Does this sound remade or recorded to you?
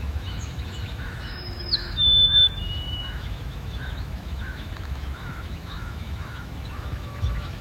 remade